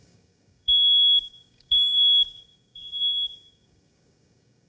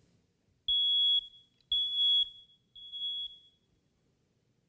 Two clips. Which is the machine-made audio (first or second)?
first